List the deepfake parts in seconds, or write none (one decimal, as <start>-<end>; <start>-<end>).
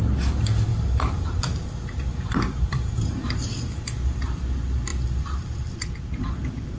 0.7-1.4; 2.1-3.6